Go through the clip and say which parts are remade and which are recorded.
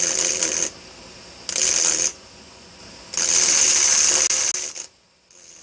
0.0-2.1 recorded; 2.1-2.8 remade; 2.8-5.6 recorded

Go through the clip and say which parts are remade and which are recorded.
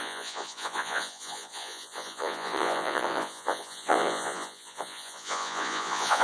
0.0-6.2 remade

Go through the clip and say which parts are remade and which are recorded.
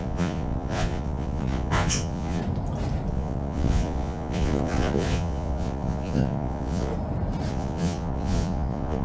0.0-2.4 remade; 2.4-3.1 recorded; 3.1-6.9 remade; 6.9-7.5 recorded; 7.5-9.0 remade